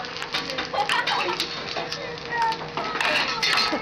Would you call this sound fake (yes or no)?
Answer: no